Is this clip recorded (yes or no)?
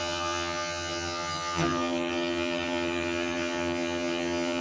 no